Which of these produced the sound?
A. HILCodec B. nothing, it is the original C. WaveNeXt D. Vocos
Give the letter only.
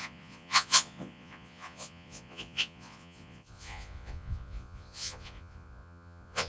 D